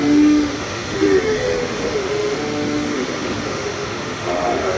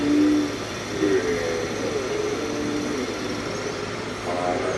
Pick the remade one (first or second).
first